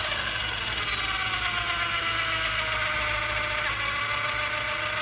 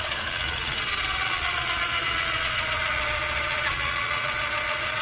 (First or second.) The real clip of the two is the first